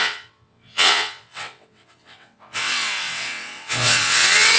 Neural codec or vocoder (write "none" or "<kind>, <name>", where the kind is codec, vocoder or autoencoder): vocoder, WaveNeXt